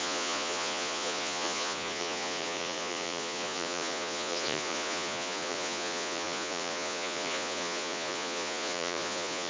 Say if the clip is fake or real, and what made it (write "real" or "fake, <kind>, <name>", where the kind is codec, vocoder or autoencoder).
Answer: fake, vocoder, Vocos